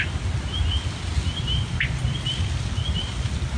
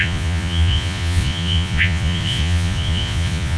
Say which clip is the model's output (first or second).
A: second